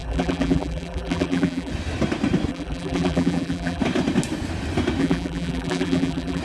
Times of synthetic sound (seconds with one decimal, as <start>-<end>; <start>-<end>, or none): 0.0-1.7; 2.5-3.8; 5.0-6.4